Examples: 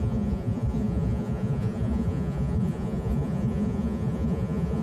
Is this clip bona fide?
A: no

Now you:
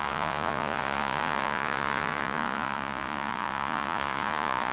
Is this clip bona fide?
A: no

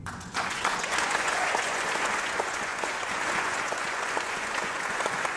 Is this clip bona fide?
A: no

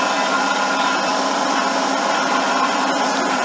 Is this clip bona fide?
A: yes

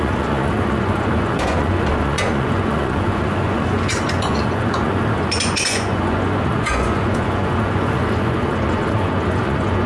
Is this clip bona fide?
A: no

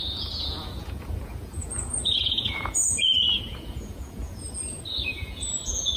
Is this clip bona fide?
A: no